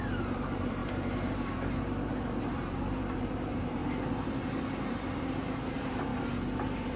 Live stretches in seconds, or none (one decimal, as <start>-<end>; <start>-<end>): 3.8-5.0; 6.1-7.0